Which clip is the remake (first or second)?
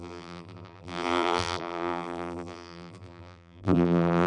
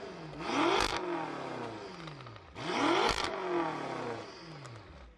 first